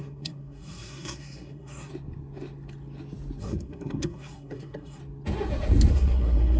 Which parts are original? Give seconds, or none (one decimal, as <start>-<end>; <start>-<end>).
1.9-3.4; 5.0-5.9